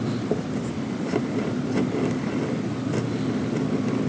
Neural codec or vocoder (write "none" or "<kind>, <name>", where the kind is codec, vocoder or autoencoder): none